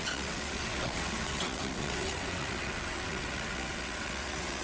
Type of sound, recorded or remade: remade